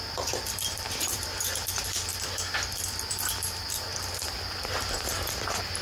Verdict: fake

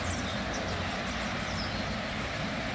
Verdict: real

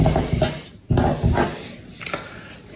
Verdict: real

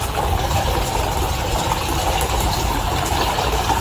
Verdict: fake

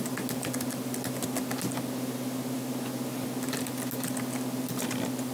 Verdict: real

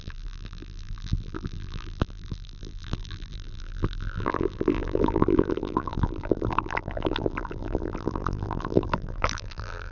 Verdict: fake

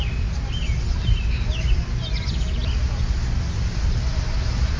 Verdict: real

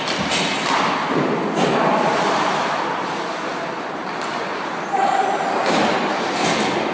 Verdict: fake